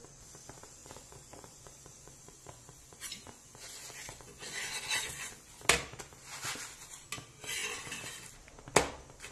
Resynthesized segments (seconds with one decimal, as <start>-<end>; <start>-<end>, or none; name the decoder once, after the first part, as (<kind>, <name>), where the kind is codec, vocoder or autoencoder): 0.8-5.3 (vocoder, Vocos)